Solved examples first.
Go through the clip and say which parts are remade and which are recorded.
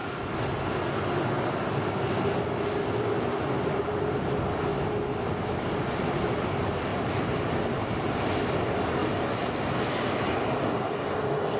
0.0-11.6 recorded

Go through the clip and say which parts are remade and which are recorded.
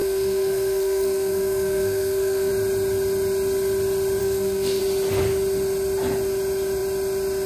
0.0-2.5 remade; 2.5-4.2 recorded; 4.2-4.8 remade; 4.8-7.5 recorded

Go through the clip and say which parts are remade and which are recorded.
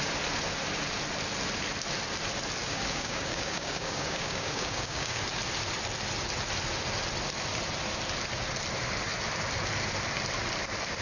0.0-2.6 recorded; 2.6-5.2 remade; 5.2-11.0 recorded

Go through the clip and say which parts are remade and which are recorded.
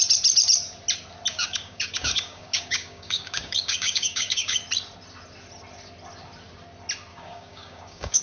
0.0-1.3 recorded; 1.3-4.6 remade; 4.6-7.1 recorded; 7.1-8.2 remade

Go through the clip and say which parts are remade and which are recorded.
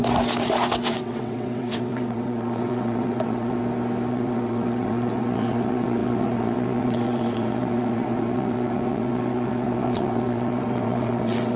0.0-0.9 recorded; 0.9-3.6 remade; 3.6-4.1 recorded; 4.1-11.6 remade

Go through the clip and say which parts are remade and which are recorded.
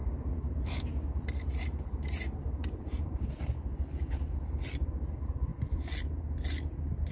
0.0-3.3 remade; 3.3-7.1 recorded